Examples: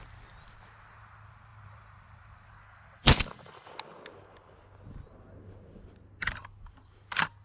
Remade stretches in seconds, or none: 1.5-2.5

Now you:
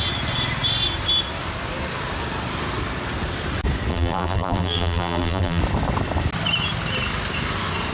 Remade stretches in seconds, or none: 3.9-5.6

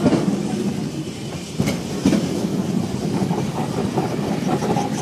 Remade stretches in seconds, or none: none